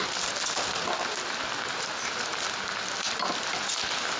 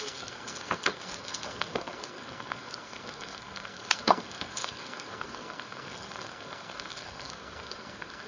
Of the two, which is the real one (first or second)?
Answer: first